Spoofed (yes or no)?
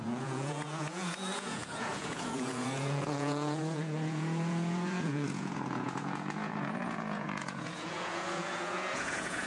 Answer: yes